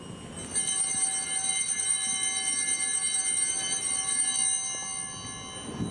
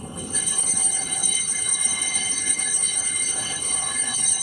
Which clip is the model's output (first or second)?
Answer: second